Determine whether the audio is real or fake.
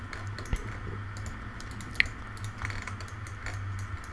real